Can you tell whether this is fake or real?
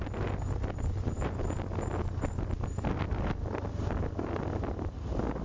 real